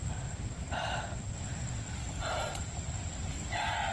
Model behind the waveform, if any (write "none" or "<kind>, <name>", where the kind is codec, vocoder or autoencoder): none